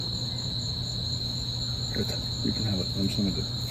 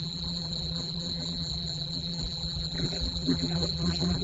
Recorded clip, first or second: first